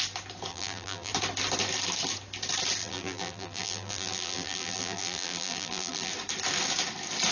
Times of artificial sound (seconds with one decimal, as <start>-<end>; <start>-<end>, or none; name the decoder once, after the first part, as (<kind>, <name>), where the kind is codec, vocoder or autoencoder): 0.5-1.1 (vocoder, BigVGAN v2); 2.8-6.1